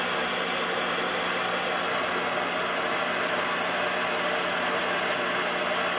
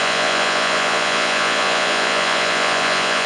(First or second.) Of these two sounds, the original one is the first